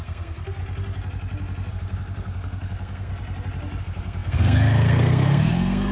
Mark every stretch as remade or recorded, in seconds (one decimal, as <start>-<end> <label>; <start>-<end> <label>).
0.0-0.6 remade; 0.6-1.7 recorded; 1.7-3.1 remade; 3.1-3.8 recorded; 3.8-5.9 remade